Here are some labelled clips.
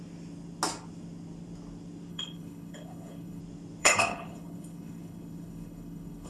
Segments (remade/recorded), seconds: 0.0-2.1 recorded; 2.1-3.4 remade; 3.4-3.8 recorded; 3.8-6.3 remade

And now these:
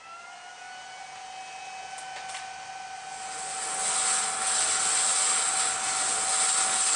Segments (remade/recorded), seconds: 0.0-7.0 recorded

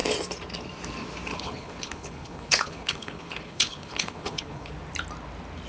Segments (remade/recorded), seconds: 0.0-1.3 recorded; 1.3-4.7 remade; 4.7-5.7 recorded

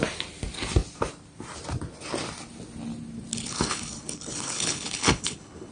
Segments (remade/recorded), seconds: 0.0-3.3 recorded; 3.3-5.7 remade

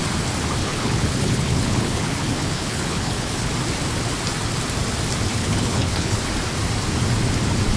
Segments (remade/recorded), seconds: 0.0-0.6 recorded; 0.6-3.5 remade; 3.5-5.3 recorded; 5.3-6.2 remade; 6.2-7.8 recorded